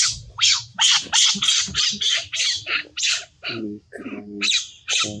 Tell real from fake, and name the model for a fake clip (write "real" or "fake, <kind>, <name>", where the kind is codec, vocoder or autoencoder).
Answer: real